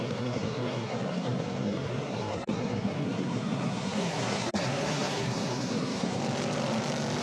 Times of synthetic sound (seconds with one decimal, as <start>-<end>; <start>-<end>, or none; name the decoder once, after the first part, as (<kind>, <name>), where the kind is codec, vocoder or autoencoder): 0.0-6.2 (codec, SNAC)